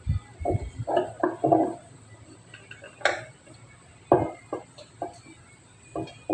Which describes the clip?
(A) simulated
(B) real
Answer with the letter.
B